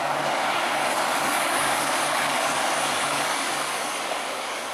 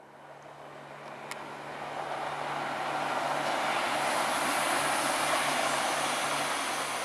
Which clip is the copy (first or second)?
first